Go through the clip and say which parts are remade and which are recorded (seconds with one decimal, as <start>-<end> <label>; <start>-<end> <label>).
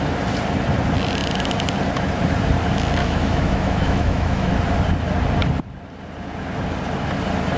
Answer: 0.0-3.0 recorded; 3.0-4.5 remade; 4.5-7.6 recorded